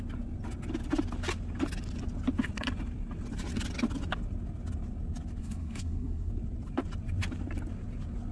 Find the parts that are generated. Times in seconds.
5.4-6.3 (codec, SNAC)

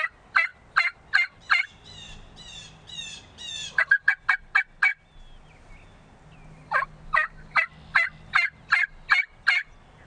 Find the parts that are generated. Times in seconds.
none

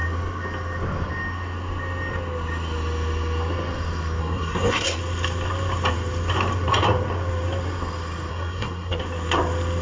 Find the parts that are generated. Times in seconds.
4.2-5.0 (codec, SNAC); 8.3-9.0

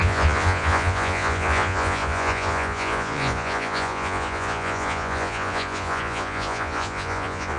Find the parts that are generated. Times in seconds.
0.0-7.6 (vocoder, Vocos)

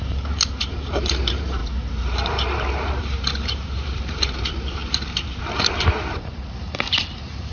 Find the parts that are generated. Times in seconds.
0.0-7.5 (vocoder, BigVGAN v2)

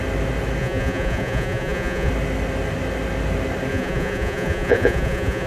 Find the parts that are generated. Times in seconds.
0.6-2.1 (vocoder, Vocos); 3.7-5.5

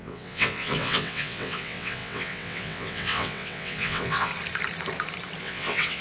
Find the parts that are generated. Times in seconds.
0.0-4.3 (vocoder, WaveNeXt); 5.4-6.0

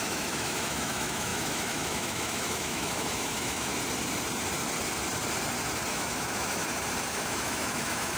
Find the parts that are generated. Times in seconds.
0.0-3.7 (autoencoder, DAC-VAE); 5.9-6.6; 7.1-8.2